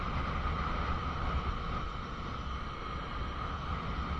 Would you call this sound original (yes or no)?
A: yes